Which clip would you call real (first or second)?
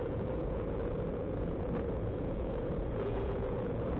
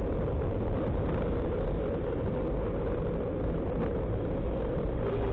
second